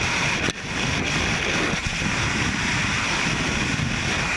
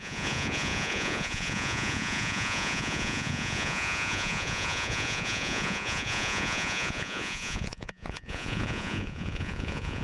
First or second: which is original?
first